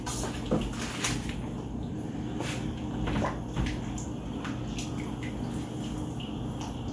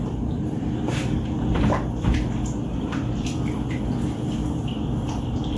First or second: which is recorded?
first